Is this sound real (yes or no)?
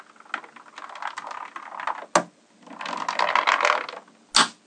yes